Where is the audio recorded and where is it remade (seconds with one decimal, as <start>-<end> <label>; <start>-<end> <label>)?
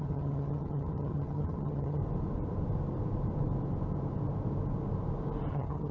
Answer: 0.0-2.0 remade; 2.0-5.5 recorded; 5.5-5.9 remade